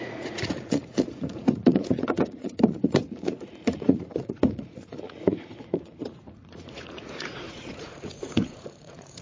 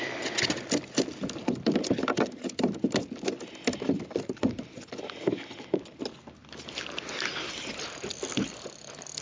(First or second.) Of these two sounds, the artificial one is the first